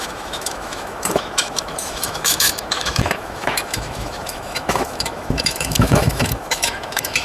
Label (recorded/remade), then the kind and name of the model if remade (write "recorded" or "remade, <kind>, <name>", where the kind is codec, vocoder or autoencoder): remade, autoencoder, DAC-VAE